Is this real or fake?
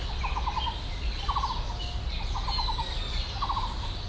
real